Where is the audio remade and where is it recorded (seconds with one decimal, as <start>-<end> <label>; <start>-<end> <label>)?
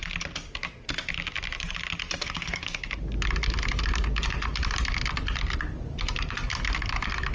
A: 0.0-2.2 recorded; 2.2-2.8 remade; 2.8-7.3 recorded